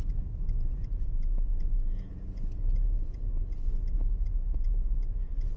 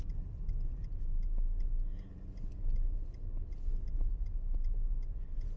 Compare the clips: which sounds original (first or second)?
second